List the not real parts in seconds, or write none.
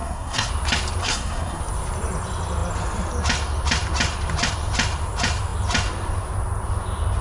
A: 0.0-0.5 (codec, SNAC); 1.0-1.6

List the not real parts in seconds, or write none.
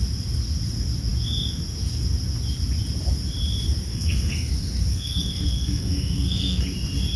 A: 3.9-4.5 (codec, SNAC); 4.9-6.6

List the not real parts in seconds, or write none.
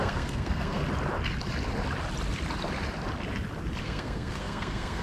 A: 0.0-0.8 (codec, SNAC); 3.8-5.0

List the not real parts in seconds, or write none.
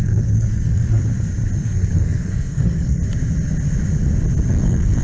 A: 0.0-1.0 (codec, SNAC); 1.6-3.0; 4.5-5.0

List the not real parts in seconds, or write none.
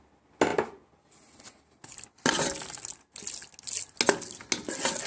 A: none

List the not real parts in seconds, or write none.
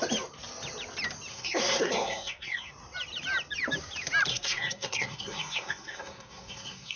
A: 1.3-2.7 (codec, SNAC); 4.3-7.0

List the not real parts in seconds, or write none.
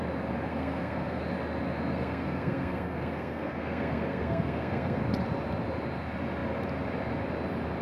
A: 0.5-1.2 (codec, SNAC); 1.9-5.0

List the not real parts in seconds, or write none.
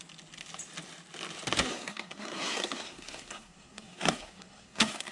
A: 1.7-5.1 (codec, SNAC)